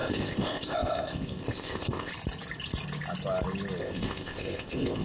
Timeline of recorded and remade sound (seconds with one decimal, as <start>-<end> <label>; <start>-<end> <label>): 0.0-2.1 remade; 2.1-3.8 recorded; 3.8-5.0 remade